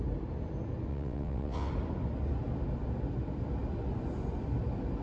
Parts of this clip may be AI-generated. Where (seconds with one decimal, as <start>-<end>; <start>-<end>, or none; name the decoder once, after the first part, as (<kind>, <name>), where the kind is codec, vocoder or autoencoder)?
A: 0.9-1.7 (vocoder, WaveNeXt)